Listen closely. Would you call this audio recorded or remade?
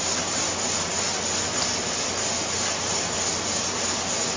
recorded